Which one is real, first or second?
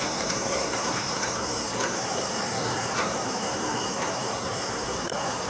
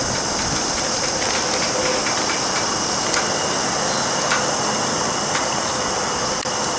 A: second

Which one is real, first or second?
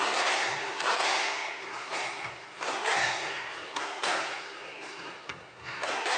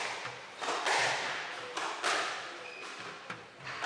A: second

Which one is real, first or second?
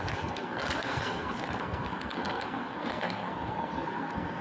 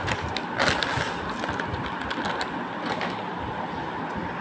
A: second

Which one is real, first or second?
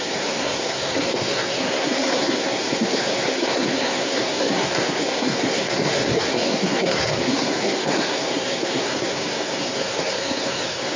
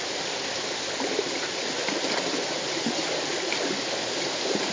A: second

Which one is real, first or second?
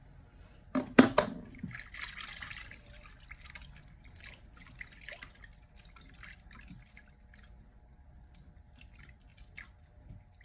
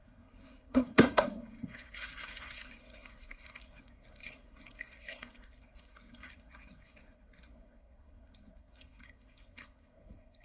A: first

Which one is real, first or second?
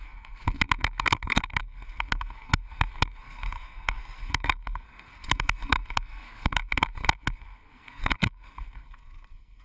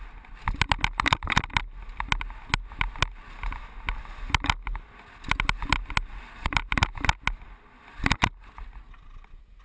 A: second